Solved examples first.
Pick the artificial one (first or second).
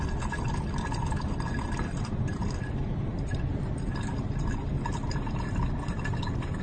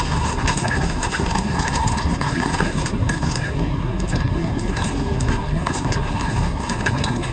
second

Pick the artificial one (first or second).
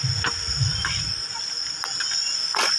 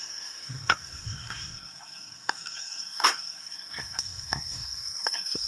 second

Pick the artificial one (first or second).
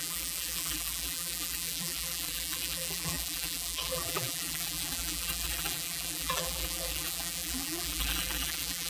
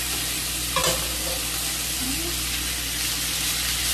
first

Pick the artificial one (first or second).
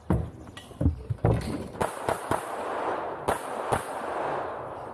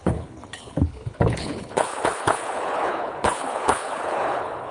second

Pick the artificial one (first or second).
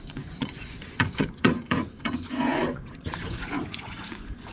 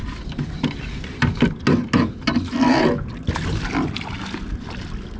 first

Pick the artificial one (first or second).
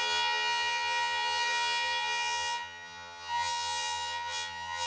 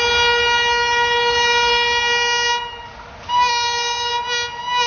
first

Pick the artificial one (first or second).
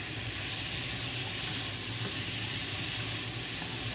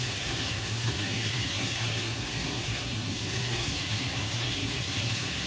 second